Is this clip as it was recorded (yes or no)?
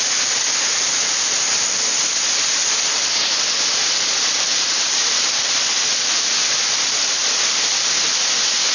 yes